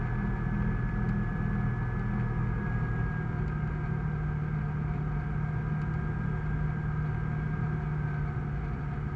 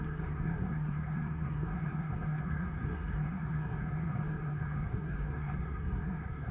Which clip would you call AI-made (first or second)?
second